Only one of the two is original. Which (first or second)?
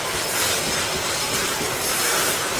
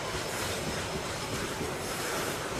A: first